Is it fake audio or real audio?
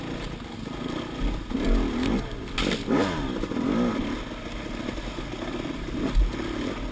real